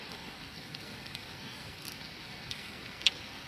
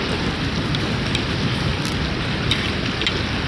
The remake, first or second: first